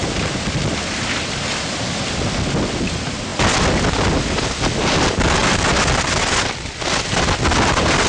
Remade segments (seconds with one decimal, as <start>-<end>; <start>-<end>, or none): 3.3-3.8